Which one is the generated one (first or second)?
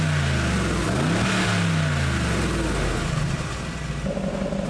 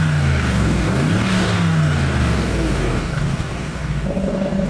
second